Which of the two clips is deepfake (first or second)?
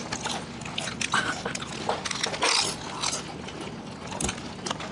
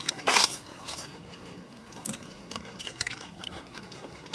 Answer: second